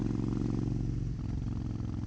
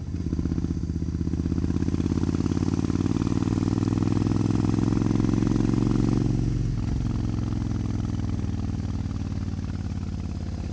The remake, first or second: first